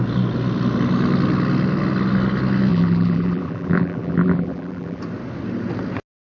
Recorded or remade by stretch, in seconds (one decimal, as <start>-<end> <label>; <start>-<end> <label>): 0.0-2.7 recorded; 2.7-5.0 remade; 5.0-6.2 recorded